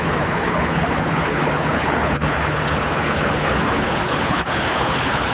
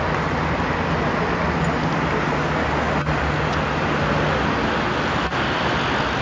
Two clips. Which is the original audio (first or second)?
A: second